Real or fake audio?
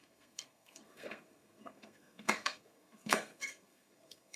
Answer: fake